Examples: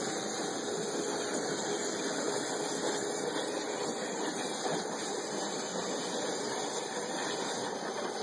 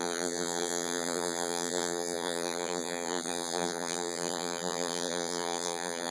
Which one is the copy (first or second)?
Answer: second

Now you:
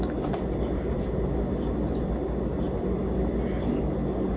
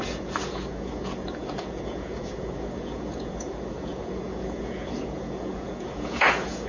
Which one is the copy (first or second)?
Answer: second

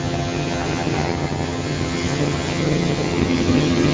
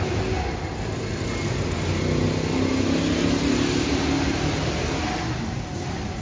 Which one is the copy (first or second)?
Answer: first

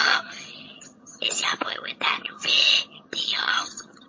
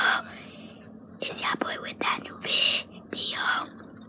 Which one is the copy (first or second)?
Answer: first